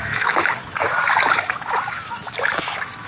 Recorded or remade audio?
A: remade